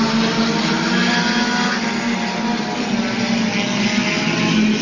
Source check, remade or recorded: recorded